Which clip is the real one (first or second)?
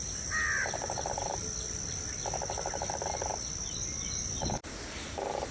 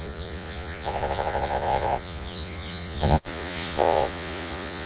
first